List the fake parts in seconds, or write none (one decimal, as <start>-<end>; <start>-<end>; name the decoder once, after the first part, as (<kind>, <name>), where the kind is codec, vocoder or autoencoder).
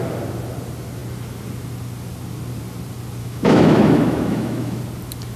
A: 3.2-4.8 (autoencoder, DAC-VAE)